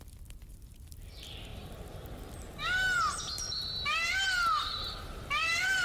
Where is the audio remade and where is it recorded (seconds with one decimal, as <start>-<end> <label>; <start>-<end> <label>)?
0.0-1.5 remade; 1.5-5.0 recorded; 5.0-5.8 remade